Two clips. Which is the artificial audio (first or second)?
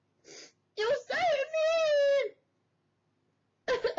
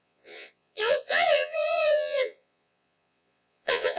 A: second